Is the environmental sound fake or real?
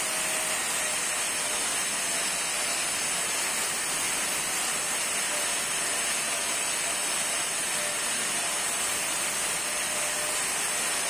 real